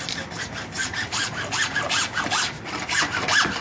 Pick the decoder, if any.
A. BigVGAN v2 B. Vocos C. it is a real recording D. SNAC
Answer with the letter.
C